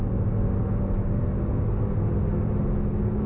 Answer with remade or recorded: recorded